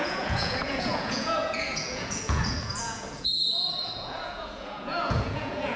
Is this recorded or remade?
remade